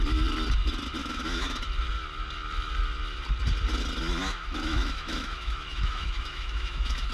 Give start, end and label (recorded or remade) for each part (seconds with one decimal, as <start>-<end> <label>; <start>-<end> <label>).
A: 0.0-1.0 recorded; 1.0-1.6 remade; 1.6-4.2 recorded; 4.2-7.1 remade